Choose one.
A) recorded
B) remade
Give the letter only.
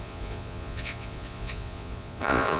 B